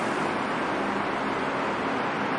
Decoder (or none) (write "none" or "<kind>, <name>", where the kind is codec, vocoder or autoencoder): none